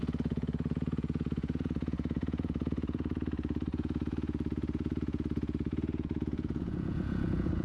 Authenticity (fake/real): fake